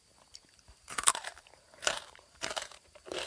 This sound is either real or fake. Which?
fake